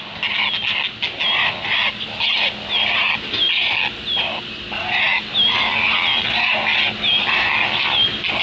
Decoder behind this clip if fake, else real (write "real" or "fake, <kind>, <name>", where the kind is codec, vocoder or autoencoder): real